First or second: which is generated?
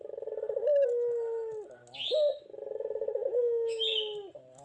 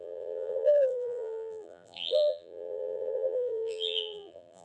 second